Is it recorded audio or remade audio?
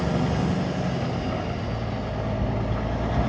recorded